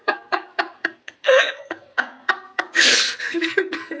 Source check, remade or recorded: remade